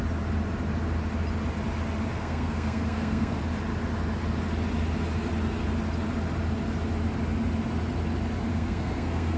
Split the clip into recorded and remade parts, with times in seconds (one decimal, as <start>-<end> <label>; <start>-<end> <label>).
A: 0.0-2.1 recorded; 2.1-3.4 remade; 3.4-8.5 recorded; 8.5-9.4 remade